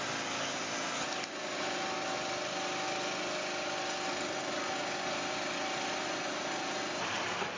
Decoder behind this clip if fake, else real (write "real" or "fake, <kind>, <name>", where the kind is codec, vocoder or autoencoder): real